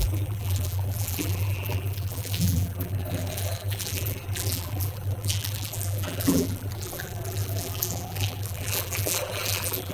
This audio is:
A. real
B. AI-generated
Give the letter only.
B